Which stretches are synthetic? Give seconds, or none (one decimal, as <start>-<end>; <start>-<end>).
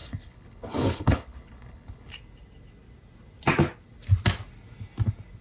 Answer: 0.0-2.1